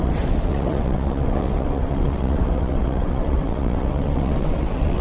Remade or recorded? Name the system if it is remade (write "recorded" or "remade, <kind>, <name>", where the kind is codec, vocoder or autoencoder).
remade, vocoder, WaveNeXt